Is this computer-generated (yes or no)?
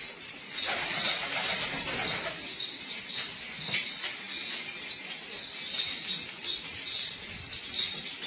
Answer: no